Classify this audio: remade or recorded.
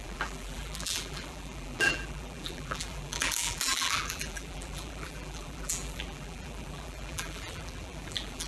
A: remade